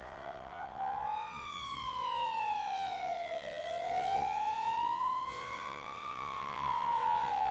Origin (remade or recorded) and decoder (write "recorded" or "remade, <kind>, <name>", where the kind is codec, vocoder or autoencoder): remade, vocoder, WaveNeXt